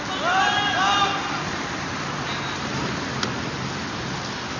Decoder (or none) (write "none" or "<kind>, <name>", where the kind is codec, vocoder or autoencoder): none